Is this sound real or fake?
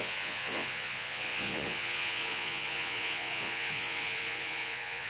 fake